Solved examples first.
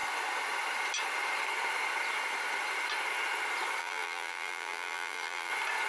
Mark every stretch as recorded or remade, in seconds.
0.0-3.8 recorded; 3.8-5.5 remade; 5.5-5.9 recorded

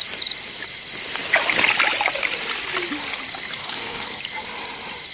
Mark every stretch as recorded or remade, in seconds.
0.0-3.6 recorded; 3.6-4.2 remade; 4.2-5.1 recorded

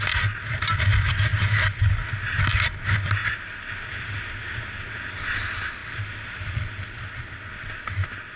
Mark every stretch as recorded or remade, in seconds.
0.0-8.4 recorded

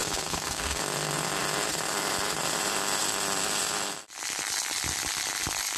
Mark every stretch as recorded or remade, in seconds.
0.0-0.8 remade; 0.8-5.8 recorded

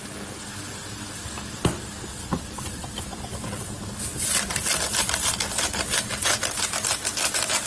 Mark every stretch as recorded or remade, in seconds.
0.0-7.7 recorded

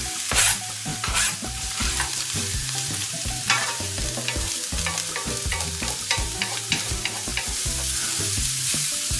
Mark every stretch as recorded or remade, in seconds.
0.0-4.0 remade; 4.0-6.1 recorded; 6.1-7.3 remade; 7.3-8.2 recorded; 8.2-9.2 remade

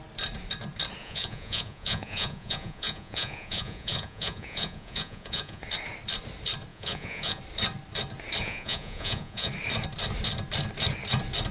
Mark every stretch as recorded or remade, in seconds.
0.0-1.0 recorded; 1.0-5.6 remade; 5.6-6.7 recorded; 6.7-7.4 remade; 7.4-8.4 recorded; 8.4-9.5 remade; 9.5-11.5 recorded